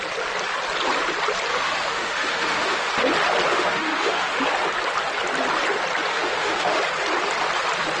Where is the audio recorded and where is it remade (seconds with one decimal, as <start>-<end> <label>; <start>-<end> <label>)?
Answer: 0.0-1.5 recorded; 1.5-2.9 remade; 2.9-3.5 recorded; 3.5-4.4 remade; 4.4-6.1 recorded; 6.1-6.8 remade; 6.8-8.0 recorded